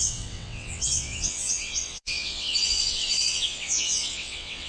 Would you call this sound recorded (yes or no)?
no